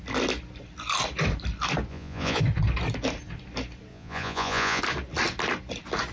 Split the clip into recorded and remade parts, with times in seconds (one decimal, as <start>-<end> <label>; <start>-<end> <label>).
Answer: 0.0-1.9 recorded; 1.9-2.4 remade; 2.4-3.9 recorded; 3.9-4.8 remade; 4.8-6.1 recorded